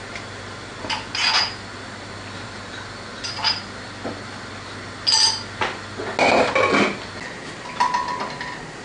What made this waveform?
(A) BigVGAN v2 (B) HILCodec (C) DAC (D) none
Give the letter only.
D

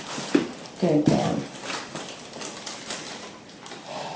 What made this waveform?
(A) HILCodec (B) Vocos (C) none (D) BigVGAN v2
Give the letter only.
D